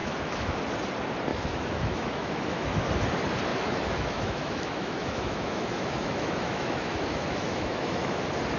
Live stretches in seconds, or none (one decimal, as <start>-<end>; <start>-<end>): 0.6-1.3; 2.8-3.5; 8.2-8.6